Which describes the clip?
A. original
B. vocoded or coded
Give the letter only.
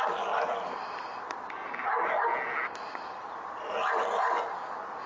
A